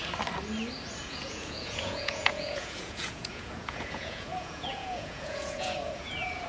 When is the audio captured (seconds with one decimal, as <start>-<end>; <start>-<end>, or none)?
0.0-1.0